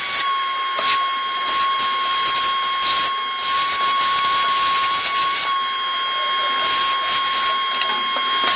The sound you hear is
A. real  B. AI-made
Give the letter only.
A